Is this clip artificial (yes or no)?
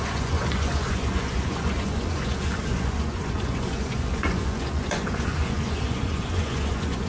yes